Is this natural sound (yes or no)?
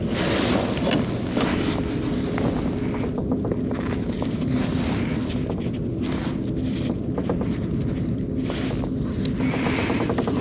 yes